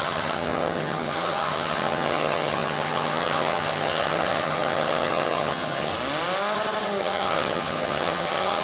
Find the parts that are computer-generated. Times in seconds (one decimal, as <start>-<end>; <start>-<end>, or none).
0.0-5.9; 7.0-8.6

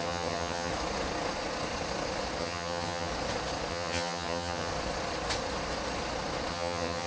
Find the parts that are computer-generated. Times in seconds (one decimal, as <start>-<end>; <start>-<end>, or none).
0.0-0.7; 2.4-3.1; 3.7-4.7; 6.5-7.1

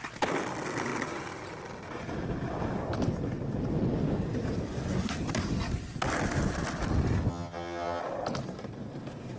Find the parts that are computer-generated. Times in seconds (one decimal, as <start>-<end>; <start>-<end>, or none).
7.3-8.0

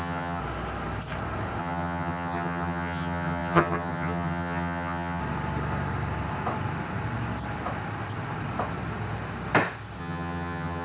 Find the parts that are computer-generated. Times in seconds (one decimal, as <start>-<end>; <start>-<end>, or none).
0.0-0.4; 1.6-5.2; 10.0-10.8

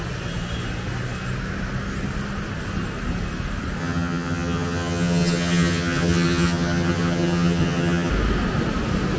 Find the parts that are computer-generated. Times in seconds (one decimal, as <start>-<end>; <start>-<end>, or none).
3.8-8.1

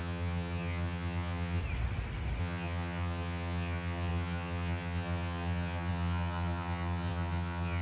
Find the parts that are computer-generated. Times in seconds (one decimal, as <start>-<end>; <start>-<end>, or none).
0.0-1.6; 2.4-7.8

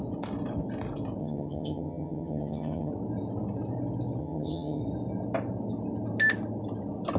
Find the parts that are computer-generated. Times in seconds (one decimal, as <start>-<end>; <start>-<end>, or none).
1.2-2.9; 4.2-4.8